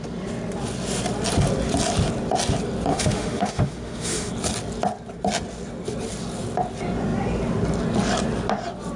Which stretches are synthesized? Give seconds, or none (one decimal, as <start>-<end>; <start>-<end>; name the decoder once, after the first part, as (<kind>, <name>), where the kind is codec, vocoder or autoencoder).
2.9-4.3 (autoencoder, DAC-VAE)